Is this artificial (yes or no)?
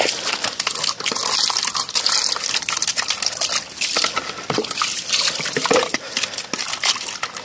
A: no